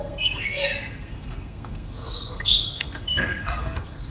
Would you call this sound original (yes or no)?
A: no